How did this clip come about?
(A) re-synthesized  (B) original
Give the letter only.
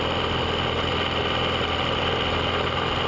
B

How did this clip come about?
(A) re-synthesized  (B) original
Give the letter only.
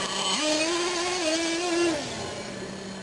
B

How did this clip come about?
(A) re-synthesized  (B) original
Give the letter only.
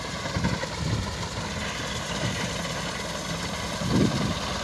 B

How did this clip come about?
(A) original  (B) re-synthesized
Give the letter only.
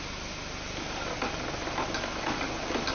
A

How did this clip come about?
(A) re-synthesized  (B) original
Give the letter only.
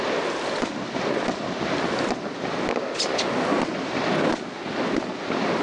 B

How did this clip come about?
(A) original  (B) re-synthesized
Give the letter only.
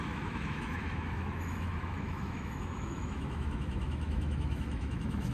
B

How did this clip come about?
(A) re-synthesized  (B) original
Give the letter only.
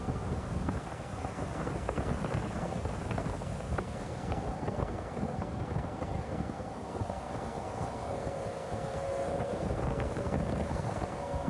A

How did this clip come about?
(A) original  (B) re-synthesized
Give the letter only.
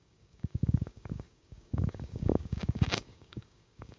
B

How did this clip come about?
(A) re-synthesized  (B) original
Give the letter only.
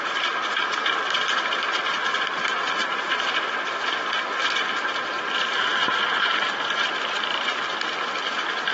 A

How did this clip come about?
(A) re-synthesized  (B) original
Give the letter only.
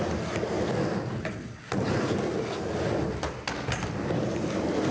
B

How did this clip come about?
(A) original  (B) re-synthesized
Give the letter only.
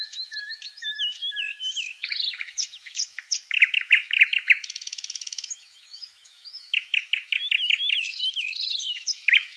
B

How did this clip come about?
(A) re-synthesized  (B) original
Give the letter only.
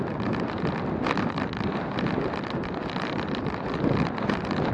B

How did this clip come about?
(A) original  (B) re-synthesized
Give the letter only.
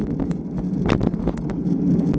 A